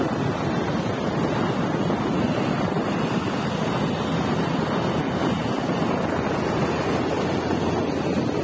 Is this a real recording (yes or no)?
yes